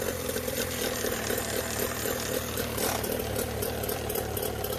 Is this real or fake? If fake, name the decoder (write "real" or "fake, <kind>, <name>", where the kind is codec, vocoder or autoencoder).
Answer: fake, vocoder, BigVGAN v2